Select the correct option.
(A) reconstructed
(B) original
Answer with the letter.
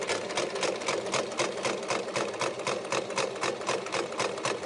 B